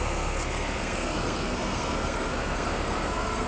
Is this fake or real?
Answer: fake